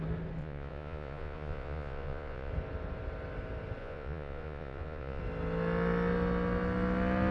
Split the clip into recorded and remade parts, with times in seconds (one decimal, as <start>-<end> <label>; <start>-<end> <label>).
0.0-0.4 recorded; 0.4-2.5 remade; 2.5-3.8 recorded; 3.8-5.2 remade; 5.2-7.3 recorded